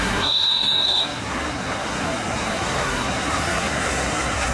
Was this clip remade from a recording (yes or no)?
yes